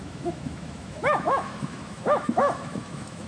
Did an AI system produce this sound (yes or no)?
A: yes